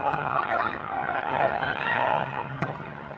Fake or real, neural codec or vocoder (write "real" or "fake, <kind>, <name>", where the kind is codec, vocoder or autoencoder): fake, vocoder, HiFi-GAN